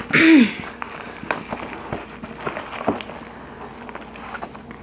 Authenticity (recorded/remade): recorded